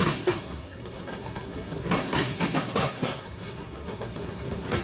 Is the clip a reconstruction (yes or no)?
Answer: yes